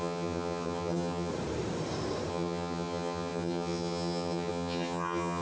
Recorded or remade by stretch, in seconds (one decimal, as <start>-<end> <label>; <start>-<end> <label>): 0.0-1.3 remade; 1.3-2.3 recorded; 2.3-5.4 remade